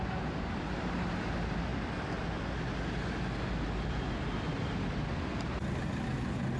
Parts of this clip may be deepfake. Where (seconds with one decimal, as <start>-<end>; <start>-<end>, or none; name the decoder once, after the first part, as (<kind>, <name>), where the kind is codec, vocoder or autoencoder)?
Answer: none